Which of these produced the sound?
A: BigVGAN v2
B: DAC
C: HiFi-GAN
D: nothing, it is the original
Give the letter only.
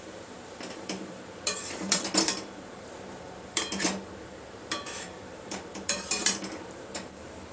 A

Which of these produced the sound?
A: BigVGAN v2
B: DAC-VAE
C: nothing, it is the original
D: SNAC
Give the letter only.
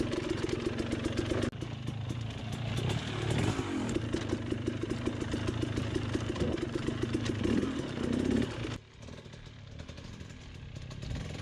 C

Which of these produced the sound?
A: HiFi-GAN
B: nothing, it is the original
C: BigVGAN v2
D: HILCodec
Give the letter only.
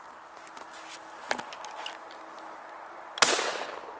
B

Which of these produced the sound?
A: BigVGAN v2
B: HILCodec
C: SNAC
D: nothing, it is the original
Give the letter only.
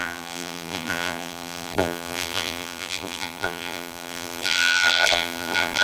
A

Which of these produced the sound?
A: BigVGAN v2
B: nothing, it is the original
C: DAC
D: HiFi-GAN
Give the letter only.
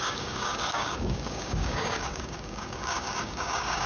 C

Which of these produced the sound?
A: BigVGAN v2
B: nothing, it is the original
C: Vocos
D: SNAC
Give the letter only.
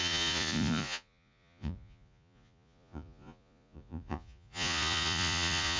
C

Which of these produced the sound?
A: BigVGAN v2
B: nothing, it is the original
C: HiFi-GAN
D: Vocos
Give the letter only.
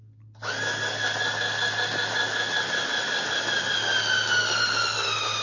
B